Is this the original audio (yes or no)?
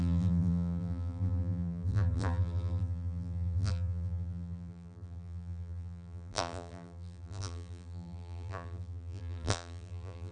no